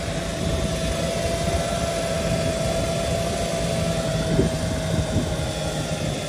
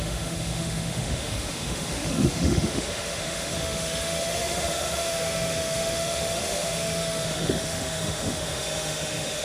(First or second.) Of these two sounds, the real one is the first